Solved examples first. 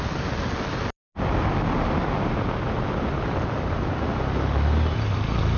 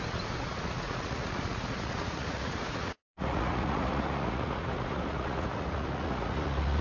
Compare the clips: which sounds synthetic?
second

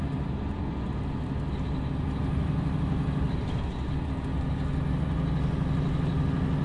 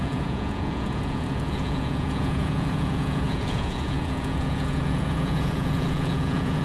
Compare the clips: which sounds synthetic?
second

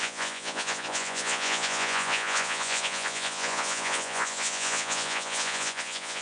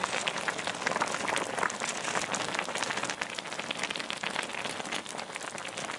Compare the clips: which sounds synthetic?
first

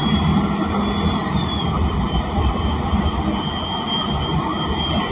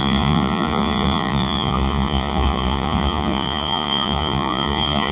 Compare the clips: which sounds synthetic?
second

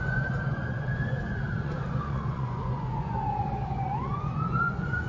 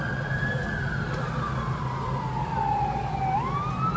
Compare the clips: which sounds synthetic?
first